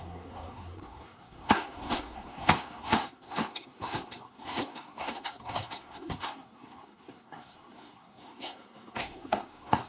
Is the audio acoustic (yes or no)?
no